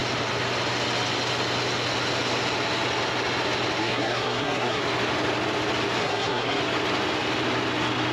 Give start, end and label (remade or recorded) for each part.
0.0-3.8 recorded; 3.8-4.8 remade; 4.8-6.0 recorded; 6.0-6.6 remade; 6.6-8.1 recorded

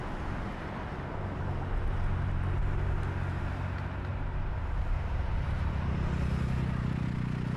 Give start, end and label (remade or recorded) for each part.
0.0-4.1 recorded; 4.1-5.7 remade; 5.7-7.6 recorded